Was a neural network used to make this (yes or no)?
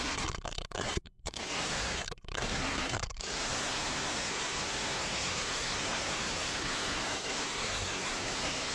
yes